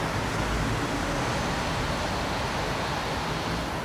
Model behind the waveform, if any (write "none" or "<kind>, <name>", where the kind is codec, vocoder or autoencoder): none